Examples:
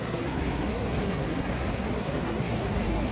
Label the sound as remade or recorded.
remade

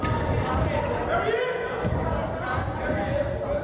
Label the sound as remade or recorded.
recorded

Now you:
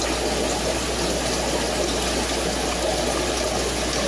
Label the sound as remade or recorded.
recorded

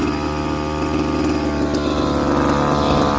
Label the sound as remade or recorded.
recorded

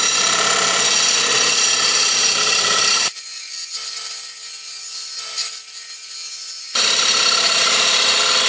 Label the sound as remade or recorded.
remade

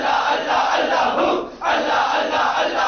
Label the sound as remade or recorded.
recorded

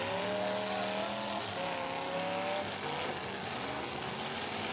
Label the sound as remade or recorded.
recorded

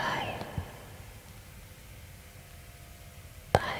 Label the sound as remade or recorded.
recorded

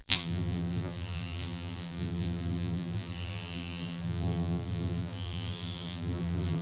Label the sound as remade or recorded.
remade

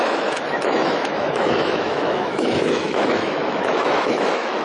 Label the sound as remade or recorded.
remade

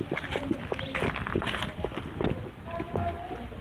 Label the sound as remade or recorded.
recorded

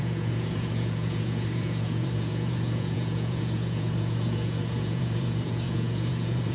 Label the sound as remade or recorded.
remade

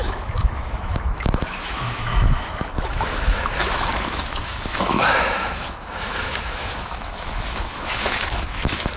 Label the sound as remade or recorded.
remade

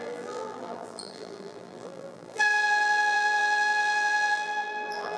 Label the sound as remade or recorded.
remade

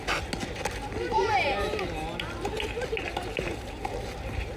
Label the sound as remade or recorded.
recorded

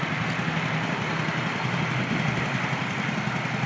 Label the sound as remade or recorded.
recorded